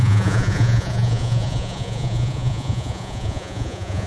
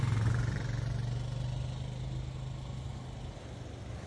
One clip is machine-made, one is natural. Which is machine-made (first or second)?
first